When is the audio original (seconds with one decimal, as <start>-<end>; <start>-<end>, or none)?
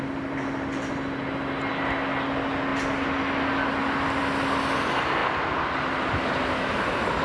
0.0-7.2